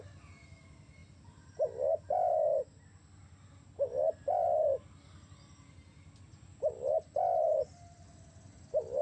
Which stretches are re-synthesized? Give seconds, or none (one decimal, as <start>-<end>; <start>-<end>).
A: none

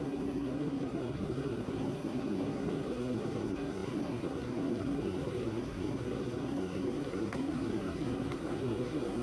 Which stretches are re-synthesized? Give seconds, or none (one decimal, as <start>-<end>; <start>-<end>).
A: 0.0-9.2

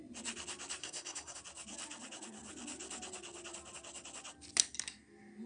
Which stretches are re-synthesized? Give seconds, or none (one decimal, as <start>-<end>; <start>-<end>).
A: 0.8-1.4

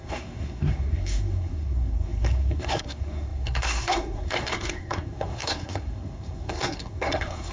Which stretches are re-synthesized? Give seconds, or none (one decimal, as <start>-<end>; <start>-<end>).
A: 0.0-7.5

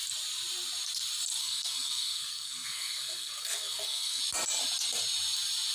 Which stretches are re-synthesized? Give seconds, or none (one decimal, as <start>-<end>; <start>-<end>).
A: 1.4-4.2

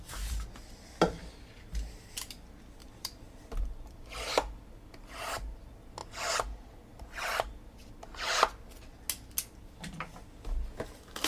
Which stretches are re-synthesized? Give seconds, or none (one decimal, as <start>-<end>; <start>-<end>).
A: none

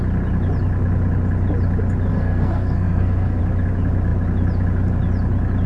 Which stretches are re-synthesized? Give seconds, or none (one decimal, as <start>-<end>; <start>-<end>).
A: 2.1-3.4

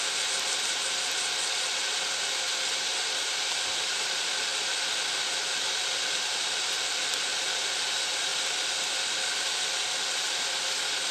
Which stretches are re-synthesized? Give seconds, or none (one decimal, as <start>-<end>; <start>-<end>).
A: none